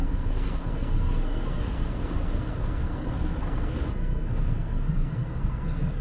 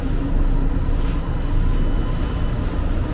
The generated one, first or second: first